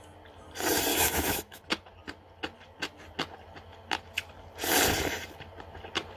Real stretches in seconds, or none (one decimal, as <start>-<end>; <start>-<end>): 0.0-0.9; 1.6-6.2